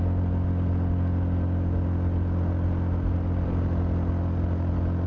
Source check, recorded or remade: recorded